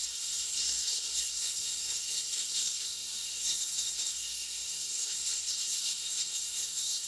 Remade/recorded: remade